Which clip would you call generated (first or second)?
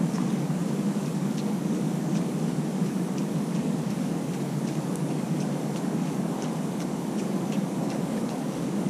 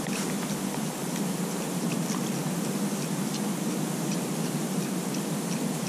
first